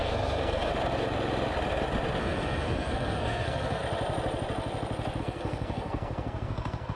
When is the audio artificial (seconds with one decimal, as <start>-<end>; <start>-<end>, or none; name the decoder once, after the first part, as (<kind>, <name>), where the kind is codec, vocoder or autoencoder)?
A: 0.0-0.7 (codec, SNAC); 2.2-3.8; 5.2-7.0